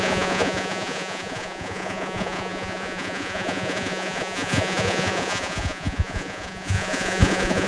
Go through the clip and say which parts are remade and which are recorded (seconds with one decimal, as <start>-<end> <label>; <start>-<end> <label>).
0.0-7.7 remade